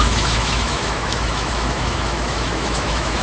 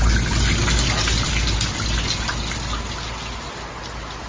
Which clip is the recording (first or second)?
second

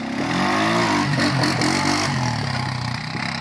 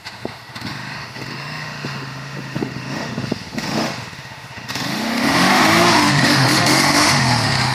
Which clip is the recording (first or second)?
first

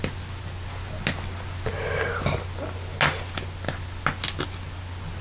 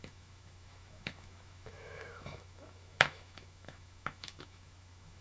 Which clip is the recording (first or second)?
first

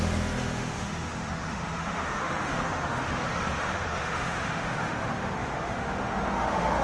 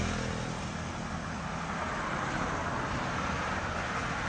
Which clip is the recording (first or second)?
second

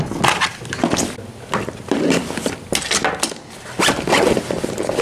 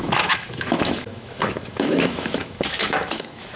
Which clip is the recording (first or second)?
first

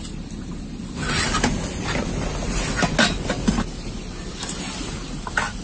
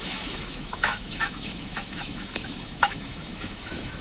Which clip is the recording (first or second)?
first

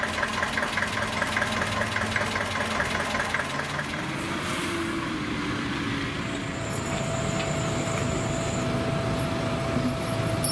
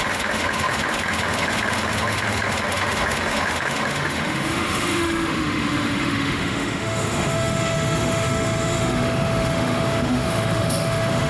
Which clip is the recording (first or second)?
first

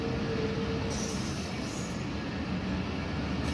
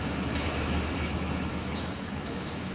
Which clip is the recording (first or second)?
first